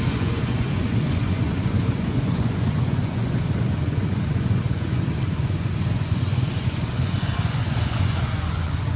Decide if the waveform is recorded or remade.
remade